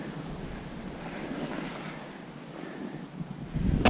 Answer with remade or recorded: recorded